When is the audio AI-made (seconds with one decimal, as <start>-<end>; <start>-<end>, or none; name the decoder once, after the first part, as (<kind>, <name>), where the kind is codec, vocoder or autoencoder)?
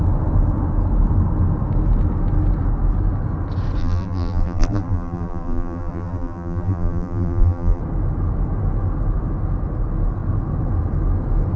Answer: 3.8-7.8 (vocoder, BigVGAN v2)